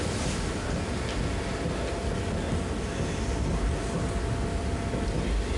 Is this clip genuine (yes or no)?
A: yes